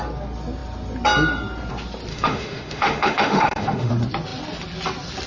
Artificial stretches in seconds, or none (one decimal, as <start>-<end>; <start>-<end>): 2.1-3.9